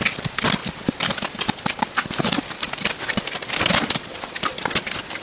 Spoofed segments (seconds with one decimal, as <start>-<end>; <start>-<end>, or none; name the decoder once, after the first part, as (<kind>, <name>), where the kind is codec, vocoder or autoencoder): 0.6-3.7 (vocoder, BigVGAN v2)